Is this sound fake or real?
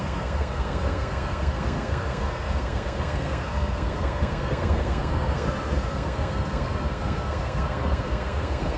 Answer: fake